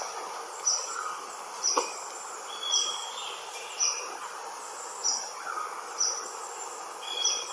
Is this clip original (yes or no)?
yes